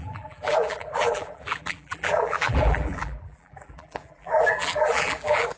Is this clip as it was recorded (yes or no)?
no